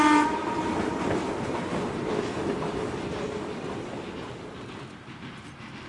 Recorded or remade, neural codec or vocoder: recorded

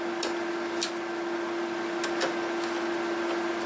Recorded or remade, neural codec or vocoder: recorded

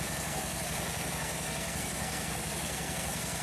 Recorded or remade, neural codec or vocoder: remade, codec, SNAC